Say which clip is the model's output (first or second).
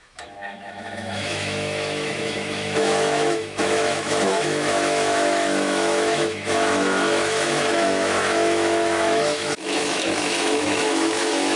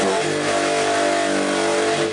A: first